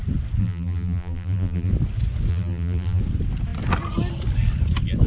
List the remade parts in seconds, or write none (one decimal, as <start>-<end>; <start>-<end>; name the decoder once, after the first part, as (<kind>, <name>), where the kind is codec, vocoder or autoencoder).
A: 0.4-1.7 (vocoder, BigVGAN v2); 2.3-3.0